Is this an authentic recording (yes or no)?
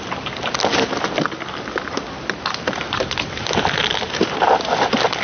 yes